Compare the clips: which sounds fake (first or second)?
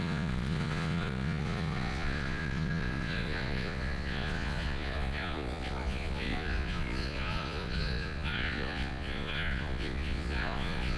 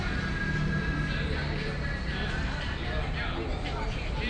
first